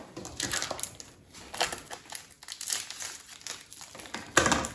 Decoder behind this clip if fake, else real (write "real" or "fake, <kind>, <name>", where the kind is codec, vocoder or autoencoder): real